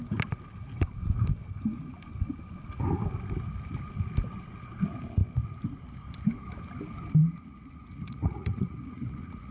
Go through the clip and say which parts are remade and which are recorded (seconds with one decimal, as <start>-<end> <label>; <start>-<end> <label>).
0.0-7.2 recorded; 7.2-9.5 remade